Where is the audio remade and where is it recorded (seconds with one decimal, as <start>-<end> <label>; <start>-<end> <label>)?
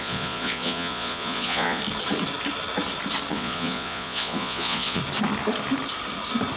0.0-1.8 remade; 1.8-3.3 recorded; 3.3-5.0 remade; 5.0-6.6 recorded